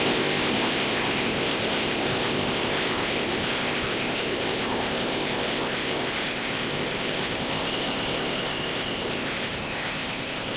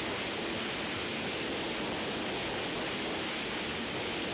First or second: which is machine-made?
first